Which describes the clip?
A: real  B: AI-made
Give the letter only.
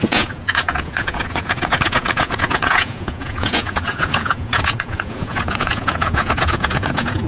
B